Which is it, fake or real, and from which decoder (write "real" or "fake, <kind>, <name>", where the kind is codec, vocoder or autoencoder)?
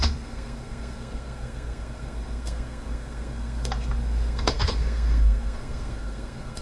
fake, codec, SNAC